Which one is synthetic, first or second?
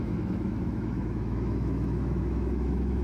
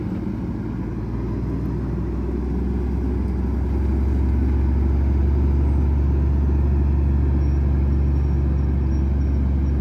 first